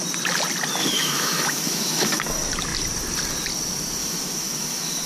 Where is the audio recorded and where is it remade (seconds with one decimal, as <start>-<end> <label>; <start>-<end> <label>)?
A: 0.0-0.8 recorded; 0.8-2.2 remade; 2.2-4.0 recorded; 4.0-5.1 remade